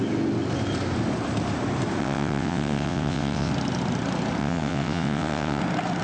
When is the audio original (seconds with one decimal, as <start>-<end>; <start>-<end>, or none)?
0.0-2.0; 3.5-4.4; 5.6-6.0